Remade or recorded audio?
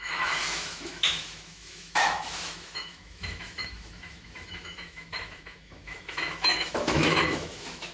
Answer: remade